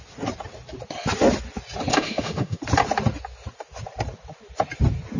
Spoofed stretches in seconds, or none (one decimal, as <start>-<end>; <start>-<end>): 1.9-2.6